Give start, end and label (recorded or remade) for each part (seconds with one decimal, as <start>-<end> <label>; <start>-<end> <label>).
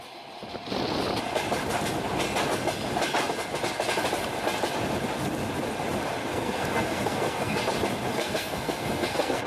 0.0-6.2 recorded; 6.2-7.6 remade; 7.6-8.1 recorded; 8.1-9.5 remade